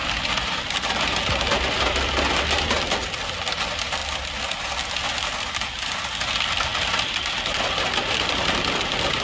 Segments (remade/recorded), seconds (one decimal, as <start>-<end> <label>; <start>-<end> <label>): 0.0-9.2 recorded